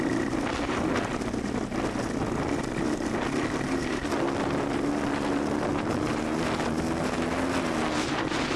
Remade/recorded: recorded